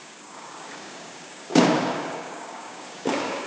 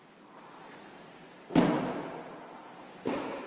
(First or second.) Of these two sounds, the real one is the second